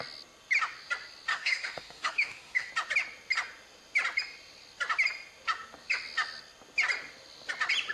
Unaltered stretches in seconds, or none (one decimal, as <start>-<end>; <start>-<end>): 0.0-1.3; 2.7-7.9